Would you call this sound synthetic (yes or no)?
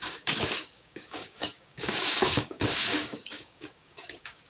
yes